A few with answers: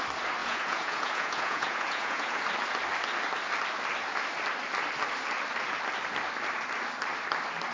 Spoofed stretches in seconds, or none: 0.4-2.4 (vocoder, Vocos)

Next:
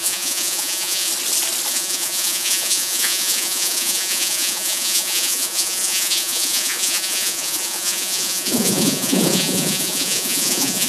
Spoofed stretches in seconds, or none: 0.0-1.1 (vocoder, Vocos); 1.7-10.9

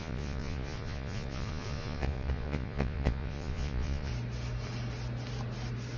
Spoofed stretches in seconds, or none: 0.0-4.1 (vocoder, Vocos)

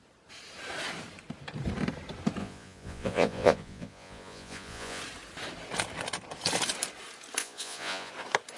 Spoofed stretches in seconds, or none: 2.4-5.0 (vocoder, Vocos); 7.4-8.1

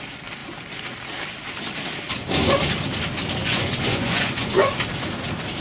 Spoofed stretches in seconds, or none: 3.4-4.7 (vocoder, Vocos)

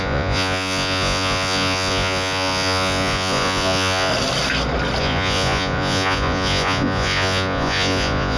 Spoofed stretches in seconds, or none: 0.0-4.1 (vocoder, Vocos); 5.0-8.4

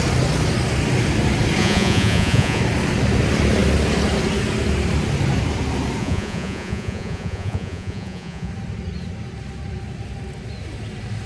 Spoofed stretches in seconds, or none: 1.6-2.6 (vocoder, Vocos); 6.0-8.5

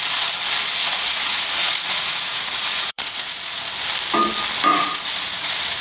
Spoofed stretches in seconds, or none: 0.8-3.6 (vocoder, Vocos); 4.7-5.8